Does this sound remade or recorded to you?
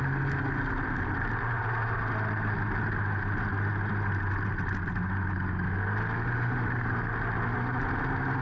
recorded